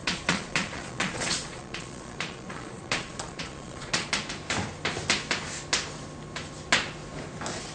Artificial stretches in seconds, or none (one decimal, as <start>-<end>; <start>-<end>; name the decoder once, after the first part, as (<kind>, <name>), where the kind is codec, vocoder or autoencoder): 0.0-4.1 (vocoder, Vocos)